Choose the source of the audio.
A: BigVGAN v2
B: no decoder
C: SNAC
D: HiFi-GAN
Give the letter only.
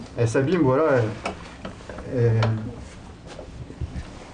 B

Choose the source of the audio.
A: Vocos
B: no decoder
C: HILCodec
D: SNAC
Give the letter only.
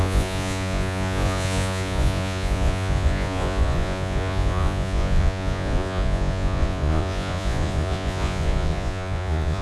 A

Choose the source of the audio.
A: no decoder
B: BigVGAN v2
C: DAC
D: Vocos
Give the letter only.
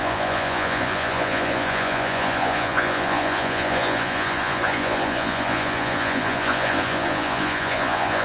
D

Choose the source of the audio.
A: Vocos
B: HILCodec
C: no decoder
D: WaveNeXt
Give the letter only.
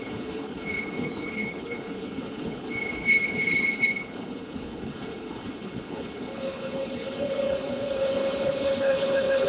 B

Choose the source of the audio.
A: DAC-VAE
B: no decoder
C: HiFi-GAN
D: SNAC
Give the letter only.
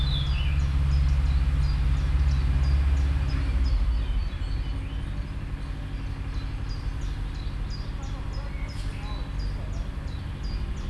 B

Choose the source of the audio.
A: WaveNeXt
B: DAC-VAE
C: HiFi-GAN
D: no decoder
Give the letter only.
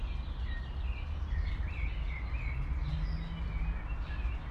D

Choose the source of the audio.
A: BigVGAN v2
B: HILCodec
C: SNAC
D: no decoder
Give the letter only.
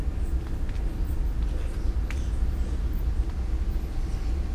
D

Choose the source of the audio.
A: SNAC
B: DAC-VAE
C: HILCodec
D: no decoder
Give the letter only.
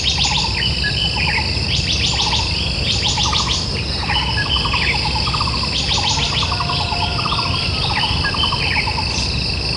D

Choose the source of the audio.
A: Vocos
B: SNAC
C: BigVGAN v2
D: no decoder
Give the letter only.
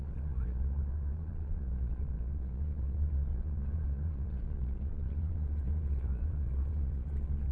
A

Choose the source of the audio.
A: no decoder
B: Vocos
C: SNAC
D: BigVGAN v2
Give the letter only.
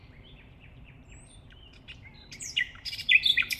D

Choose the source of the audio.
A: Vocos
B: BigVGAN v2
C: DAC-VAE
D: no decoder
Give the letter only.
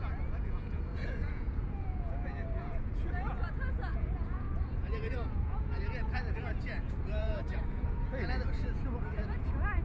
A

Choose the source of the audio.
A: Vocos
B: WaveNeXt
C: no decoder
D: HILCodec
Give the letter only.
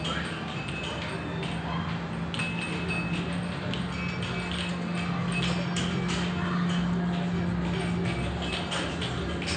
C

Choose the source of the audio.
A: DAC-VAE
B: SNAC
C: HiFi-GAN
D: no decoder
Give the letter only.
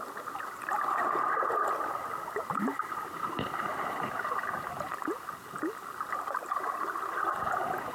D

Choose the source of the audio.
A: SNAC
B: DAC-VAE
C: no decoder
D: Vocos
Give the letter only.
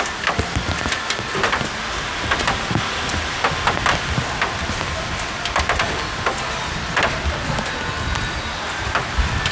C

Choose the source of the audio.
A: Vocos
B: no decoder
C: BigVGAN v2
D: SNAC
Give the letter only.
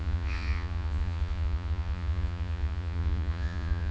A